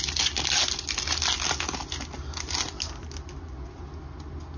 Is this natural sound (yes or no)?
yes